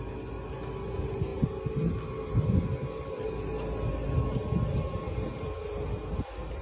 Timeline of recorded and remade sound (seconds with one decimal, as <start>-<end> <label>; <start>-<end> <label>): 0.0-6.6 recorded